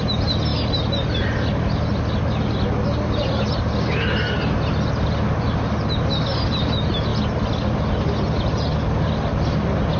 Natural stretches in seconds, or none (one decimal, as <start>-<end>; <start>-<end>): 0.0-10.0